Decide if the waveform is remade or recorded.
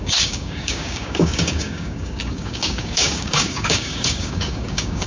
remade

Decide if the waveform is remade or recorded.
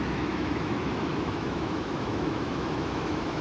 remade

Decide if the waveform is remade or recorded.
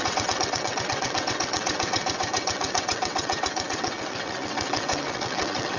remade